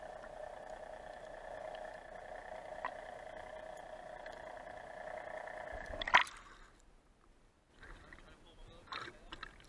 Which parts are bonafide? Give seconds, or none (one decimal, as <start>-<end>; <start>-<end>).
0.0-9.7